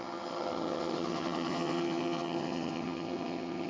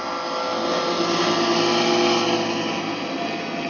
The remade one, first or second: first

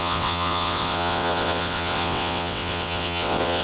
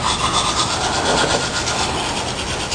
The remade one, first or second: first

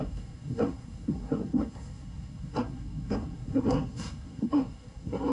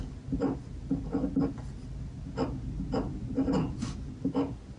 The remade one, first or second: first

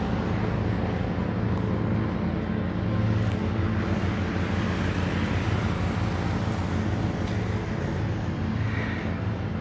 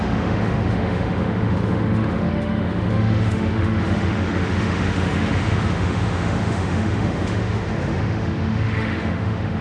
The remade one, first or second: second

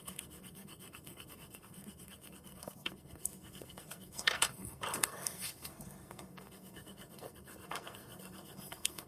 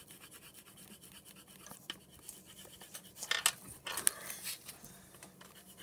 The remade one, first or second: first